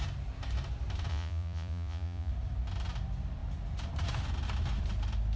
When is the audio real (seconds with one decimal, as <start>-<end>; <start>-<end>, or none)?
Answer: 0.0-1.1; 2.3-5.4